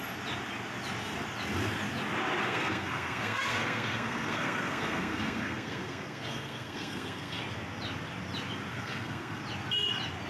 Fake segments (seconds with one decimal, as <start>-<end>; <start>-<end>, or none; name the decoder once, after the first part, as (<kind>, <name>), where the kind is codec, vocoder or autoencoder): 2.4-7.4 (codec, SNAC); 8.7-9.4